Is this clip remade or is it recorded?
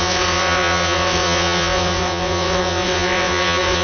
remade